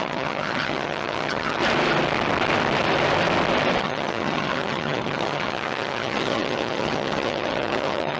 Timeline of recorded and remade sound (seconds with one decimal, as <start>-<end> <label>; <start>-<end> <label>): 0.0-1.6 remade; 1.6-3.8 recorded; 3.8-8.2 remade